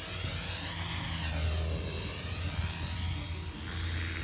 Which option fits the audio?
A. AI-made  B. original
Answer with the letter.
B